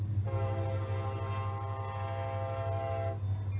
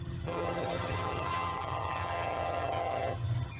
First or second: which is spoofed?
second